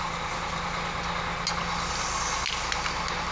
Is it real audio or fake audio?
real